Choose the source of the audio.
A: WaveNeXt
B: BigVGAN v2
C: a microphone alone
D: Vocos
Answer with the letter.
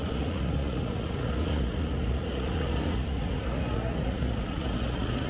D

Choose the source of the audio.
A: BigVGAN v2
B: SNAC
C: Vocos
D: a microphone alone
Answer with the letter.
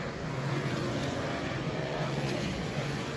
C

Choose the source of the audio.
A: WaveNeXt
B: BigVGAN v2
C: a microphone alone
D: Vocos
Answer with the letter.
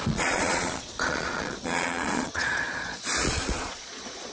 D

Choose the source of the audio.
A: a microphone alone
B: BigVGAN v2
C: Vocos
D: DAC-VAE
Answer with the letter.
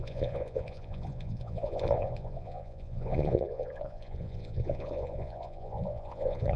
C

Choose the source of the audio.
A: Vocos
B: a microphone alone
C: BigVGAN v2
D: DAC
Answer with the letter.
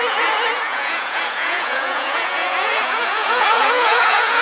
A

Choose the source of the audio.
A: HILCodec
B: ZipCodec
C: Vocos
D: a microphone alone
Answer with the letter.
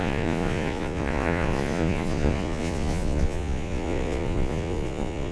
C